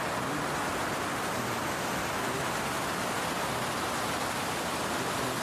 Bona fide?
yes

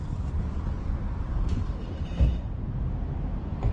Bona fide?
yes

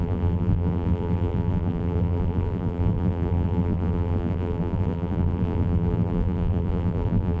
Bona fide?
no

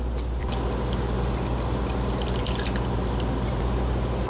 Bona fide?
yes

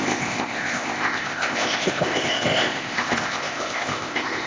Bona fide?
no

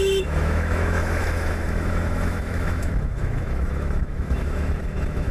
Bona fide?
no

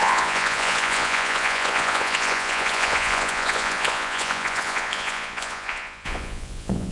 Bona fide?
no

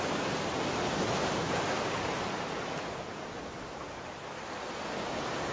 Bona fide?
no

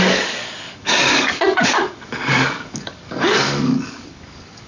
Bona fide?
no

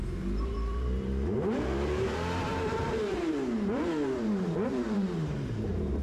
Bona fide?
no